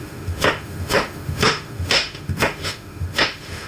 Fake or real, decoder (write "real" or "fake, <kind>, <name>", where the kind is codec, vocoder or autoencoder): fake, autoencoder, DAC-VAE